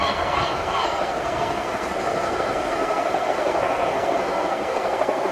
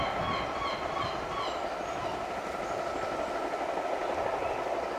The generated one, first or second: first